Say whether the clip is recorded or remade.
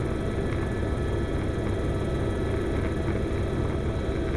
recorded